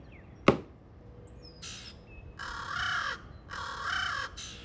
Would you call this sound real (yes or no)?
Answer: yes